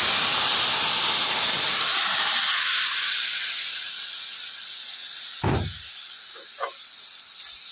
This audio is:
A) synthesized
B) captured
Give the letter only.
B